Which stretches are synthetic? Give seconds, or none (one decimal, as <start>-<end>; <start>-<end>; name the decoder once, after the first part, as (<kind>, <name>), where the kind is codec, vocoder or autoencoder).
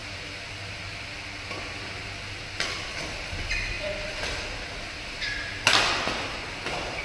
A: none